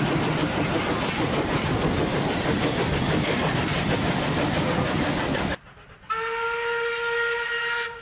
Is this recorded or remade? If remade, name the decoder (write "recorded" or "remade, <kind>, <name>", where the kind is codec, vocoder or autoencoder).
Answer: recorded